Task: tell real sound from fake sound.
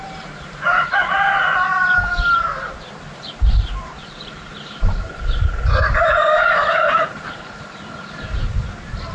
fake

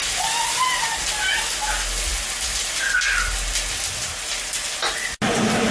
real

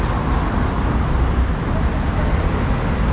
real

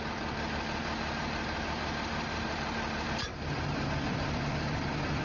fake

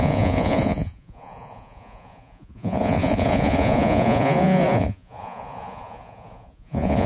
fake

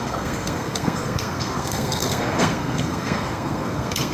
fake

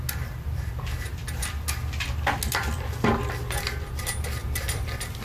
real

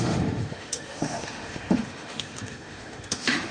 fake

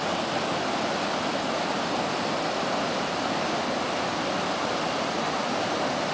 real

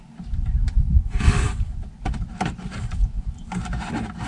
fake